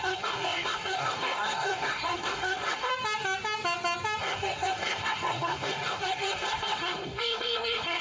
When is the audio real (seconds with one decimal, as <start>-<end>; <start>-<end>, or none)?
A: 2.9-4.2